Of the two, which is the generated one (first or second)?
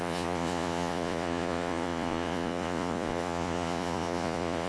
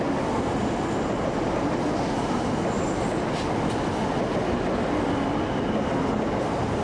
first